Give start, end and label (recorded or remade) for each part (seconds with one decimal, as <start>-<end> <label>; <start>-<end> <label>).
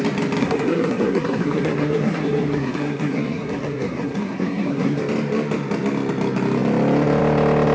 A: 0.0-0.4 recorded; 0.4-5.0 remade; 5.0-7.7 recorded